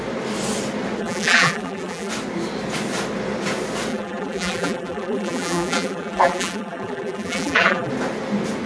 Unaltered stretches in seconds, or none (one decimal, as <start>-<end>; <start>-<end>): 0.0-1.0; 2.1-3.9; 7.9-8.7